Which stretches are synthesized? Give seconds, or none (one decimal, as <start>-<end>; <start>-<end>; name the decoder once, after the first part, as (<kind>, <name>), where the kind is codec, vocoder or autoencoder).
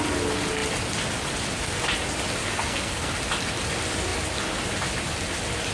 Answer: 2.4-3.1 (codec, SNAC)